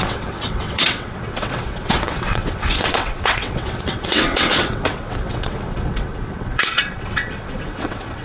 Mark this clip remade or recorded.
remade